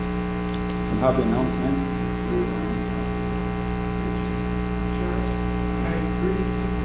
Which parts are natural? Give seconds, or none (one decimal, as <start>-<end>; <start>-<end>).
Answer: 0.0-1.8; 2.9-6.8

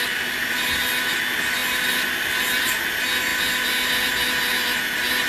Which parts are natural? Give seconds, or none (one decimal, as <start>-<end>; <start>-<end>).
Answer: 0.0-5.3

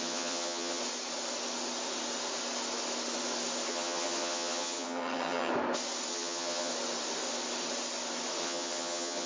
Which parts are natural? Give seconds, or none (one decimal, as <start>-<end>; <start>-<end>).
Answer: 0.8-3.7; 5.5-6.1; 6.7-8.4